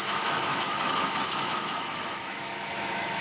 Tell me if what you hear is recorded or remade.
remade